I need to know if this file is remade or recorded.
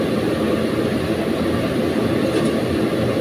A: recorded